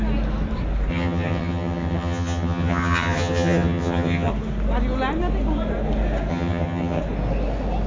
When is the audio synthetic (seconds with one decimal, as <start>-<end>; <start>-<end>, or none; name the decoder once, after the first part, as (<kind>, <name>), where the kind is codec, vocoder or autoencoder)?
0.9-4.3 (vocoder, HiFi-GAN); 6.3-7.0